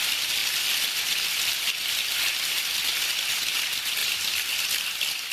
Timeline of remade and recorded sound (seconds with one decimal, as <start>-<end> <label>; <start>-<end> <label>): 0.0-5.3 recorded